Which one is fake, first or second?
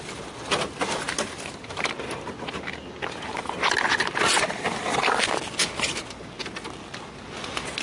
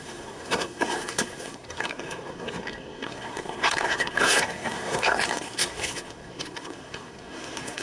second